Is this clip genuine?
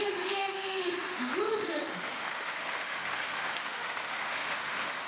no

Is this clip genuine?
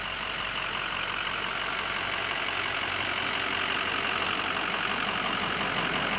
yes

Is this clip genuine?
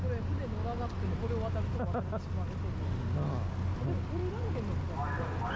yes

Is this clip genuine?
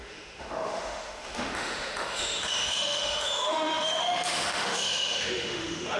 no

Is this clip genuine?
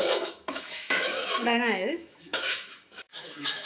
no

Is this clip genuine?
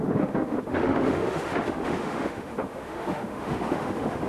no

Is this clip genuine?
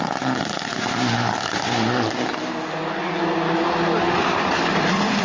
yes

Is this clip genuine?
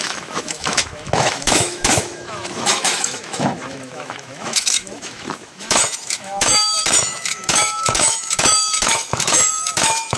no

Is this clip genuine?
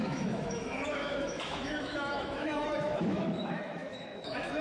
no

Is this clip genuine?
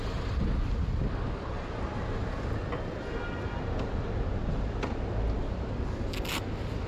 yes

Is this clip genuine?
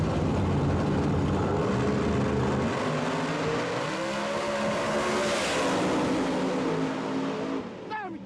yes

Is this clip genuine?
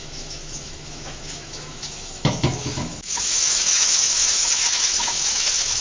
no